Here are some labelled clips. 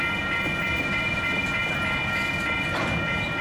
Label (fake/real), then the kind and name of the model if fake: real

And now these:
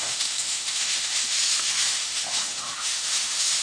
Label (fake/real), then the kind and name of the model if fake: fake, autoencoder, DAC-VAE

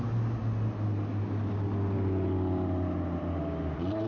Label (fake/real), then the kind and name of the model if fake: real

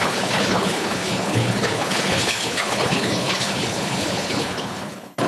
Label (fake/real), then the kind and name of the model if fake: fake, codec, HILCodec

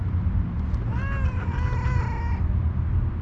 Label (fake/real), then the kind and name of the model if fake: real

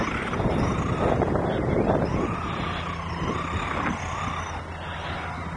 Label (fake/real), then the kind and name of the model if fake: real